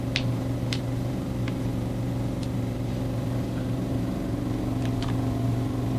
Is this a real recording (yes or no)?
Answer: no